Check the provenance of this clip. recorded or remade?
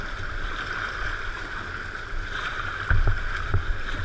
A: recorded